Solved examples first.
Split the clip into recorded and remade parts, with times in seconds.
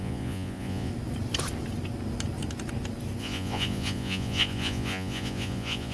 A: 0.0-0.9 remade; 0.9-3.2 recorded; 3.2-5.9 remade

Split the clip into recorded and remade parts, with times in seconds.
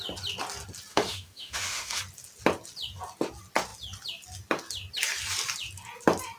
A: 0.0-0.9 recorded; 0.9-2.0 remade; 2.0-6.4 recorded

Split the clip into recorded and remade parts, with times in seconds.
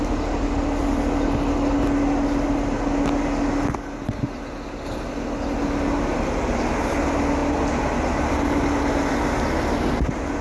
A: 0.0-10.4 recorded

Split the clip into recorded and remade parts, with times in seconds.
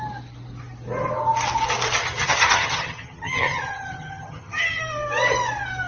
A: 0.0-2.0 recorded; 2.0-4.8 remade; 4.8-5.9 recorded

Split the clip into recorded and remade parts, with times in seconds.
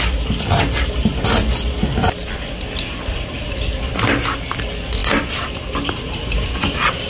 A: 0.0-7.1 recorded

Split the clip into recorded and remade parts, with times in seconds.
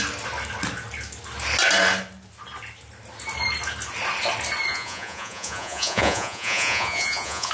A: 0.0-4.7 recorded; 4.7-7.5 remade